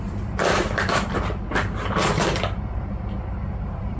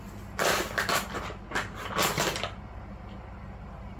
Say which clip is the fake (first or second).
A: first